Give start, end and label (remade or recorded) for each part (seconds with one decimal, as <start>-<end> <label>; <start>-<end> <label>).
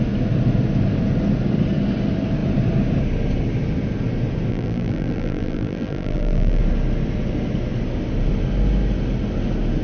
0.0-4.5 recorded; 4.5-6.6 remade; 6.6-9.8 recorded